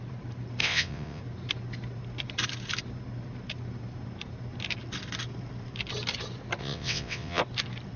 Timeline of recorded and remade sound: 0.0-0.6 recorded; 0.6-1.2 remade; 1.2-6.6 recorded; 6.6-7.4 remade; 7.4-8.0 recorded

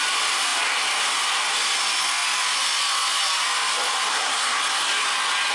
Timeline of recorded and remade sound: 0.0-4.1 recorded; 4.1-4.6 remade; 4.6-5.5 recorded

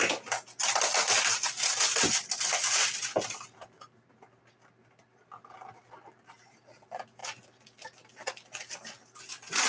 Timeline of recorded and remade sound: 0.0-9.7 recorded

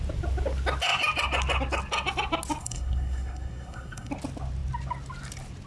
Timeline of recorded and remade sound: 0.0-2.6 recorded; 2.6-4.1 remade; 4.1-5.7 recorded